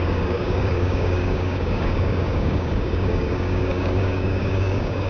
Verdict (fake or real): fake